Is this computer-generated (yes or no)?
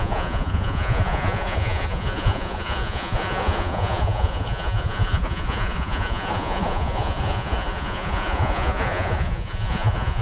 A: yes